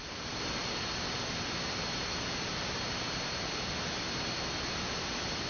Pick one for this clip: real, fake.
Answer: real